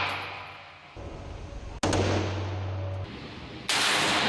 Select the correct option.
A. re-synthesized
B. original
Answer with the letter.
B